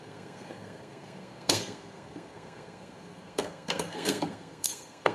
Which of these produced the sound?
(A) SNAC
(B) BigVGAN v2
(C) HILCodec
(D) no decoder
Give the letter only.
A